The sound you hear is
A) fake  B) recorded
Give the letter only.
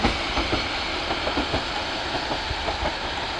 B